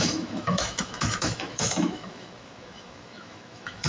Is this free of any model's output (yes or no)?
no